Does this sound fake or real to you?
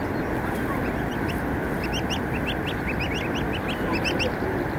real